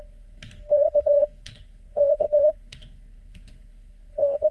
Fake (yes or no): yes